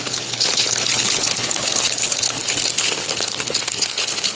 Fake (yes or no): yes